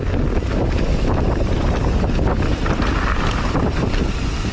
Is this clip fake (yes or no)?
no